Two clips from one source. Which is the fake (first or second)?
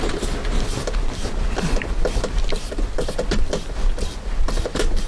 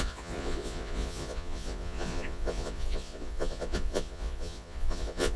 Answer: second